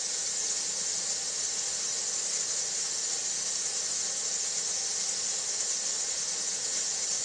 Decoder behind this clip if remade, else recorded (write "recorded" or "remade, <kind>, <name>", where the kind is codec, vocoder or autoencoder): recorded